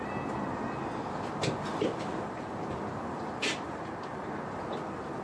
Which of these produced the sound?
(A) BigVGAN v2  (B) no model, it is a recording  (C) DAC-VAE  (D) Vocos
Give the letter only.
B